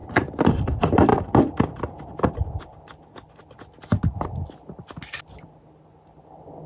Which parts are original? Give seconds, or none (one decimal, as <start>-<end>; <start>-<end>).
0.6-6.7